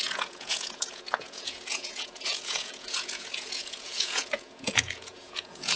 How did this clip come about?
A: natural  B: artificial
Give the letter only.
B